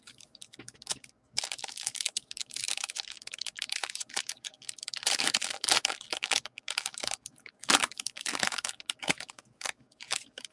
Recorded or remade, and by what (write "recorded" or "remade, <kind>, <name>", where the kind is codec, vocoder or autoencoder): remade, codec, DAC